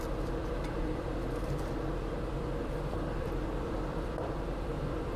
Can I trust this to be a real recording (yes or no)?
no